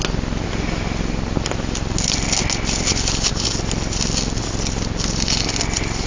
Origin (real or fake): real